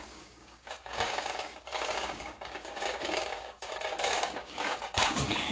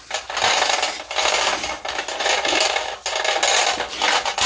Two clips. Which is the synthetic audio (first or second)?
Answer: first